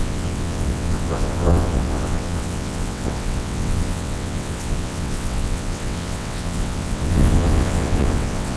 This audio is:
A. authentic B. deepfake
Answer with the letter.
B